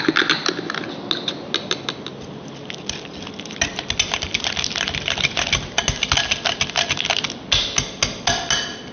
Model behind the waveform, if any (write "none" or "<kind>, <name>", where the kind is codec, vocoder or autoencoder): none